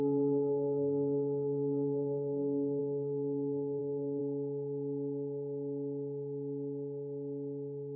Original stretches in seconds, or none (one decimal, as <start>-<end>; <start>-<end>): 4.2-8.0